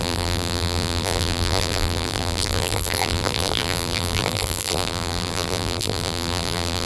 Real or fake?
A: fake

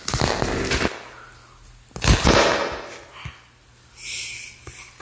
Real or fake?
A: real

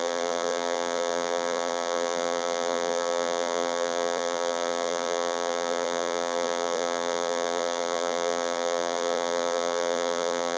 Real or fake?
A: fake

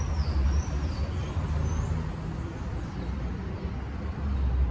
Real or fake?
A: fake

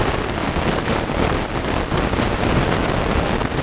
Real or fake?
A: real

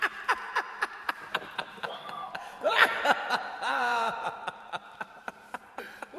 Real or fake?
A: fake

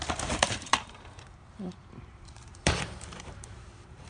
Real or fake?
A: fake